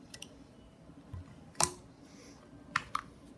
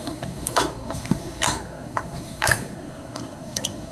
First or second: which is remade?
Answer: second